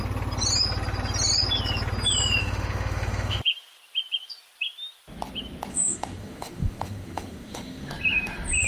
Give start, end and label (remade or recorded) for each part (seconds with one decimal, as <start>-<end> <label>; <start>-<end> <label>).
0.0-2.4 recorded; 2.4-3.4 remade; 3.4-5.7 recorded; 5.7-7.9 remade; 7.9-8.7 recorded